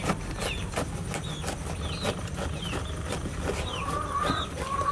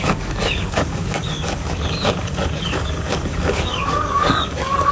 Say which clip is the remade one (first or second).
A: second